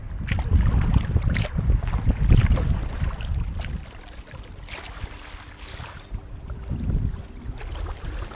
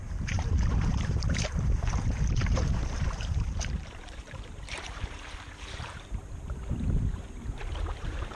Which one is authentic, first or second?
first